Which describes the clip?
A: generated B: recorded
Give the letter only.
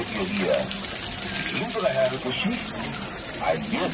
B